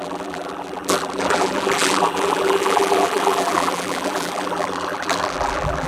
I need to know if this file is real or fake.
fake